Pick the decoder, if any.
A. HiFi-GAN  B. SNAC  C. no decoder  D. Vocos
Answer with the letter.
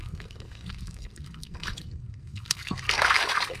B